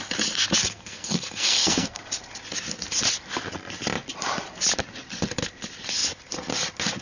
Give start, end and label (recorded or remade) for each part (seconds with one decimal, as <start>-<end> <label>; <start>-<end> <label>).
0.0-0.6 recorded; 0.6-2.0 remade; 2.0-7.0 recorded